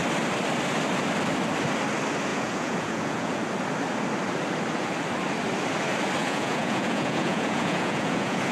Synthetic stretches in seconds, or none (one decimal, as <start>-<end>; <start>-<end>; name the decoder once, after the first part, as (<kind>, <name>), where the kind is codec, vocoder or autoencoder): 2.3-3.4 (vocoder, Vocos); 6.2-8.5